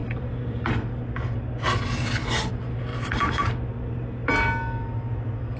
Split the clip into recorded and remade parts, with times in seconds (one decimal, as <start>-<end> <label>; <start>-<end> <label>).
0.0-0.7 remade; 0.7-2.9 recorded; 2.9-3.5 remade; 3.5-5.6 recorded